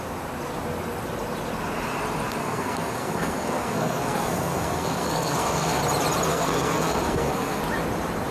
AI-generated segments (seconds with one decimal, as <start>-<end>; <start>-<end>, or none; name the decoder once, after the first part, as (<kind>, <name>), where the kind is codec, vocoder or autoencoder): 2.4-5.8 (codec, SNAC); 6.3-7.6